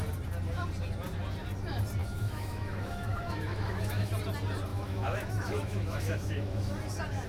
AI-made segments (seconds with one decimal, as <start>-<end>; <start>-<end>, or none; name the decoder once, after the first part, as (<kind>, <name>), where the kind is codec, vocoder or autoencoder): 2.0-4.1 (autoencoder, DAC-VAE); 4.7-6.7